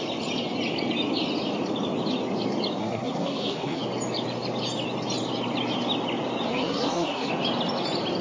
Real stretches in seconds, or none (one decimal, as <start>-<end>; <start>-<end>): 0.0-2.8; 3.8-6.5; 7.3-8.2

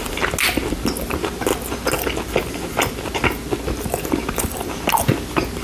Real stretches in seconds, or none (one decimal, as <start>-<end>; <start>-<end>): 0.0-5.6